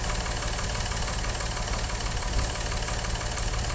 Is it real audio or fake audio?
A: real